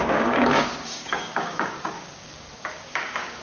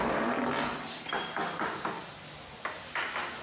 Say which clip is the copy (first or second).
first